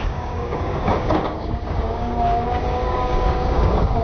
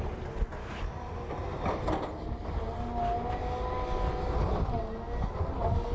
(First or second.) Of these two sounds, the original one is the second